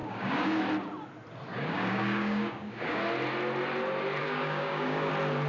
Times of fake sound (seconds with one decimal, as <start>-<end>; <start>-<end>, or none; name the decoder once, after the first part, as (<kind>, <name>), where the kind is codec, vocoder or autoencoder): 0.0-0.6 (codec, DAC); 1.5-3.0; 4.2-5.1